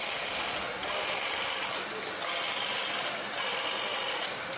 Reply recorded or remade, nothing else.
recorded